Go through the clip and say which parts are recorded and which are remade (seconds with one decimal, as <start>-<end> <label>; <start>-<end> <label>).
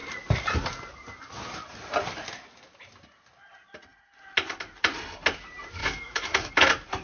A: 0.0-5.8 recorded; 5.8-6.5 remade; 6.5-7.0 recorded